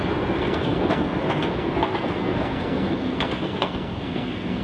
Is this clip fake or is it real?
fake